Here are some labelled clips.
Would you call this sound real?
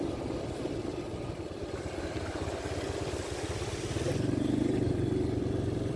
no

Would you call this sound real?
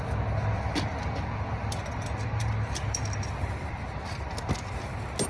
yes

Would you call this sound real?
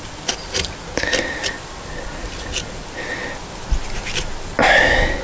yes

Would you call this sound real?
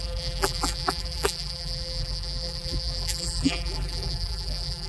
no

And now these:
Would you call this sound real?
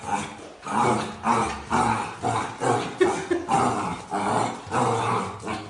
yes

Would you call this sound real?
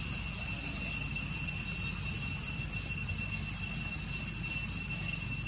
yes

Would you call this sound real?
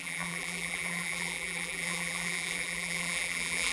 no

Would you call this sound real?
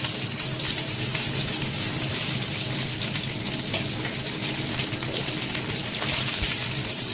yes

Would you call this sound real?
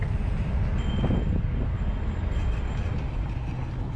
yes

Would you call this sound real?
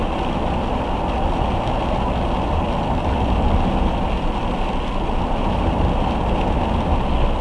yes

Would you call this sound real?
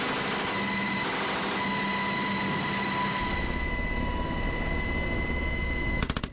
yes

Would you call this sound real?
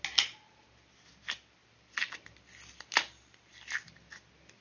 yes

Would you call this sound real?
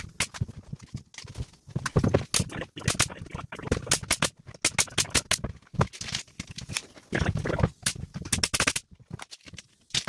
yes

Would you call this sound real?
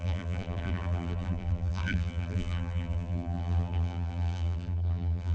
no